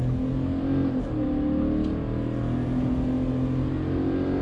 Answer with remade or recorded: recorded